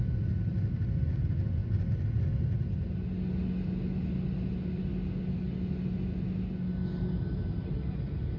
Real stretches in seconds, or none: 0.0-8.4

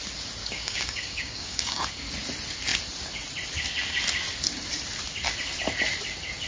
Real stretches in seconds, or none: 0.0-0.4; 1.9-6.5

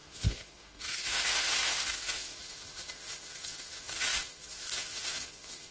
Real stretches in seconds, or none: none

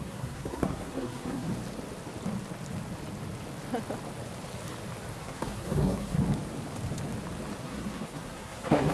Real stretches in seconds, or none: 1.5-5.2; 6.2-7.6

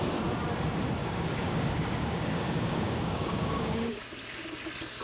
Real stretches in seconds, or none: 0.0-1.0; 4.0-5.0

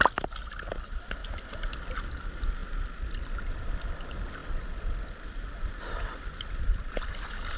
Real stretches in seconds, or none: 1.2-2.1; 2.6-3.4